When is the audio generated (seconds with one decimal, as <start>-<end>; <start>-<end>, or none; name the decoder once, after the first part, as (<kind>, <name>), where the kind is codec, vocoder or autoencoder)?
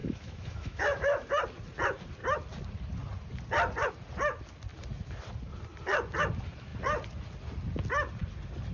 0.0-1.3 (autoencoder, DAC-VAE)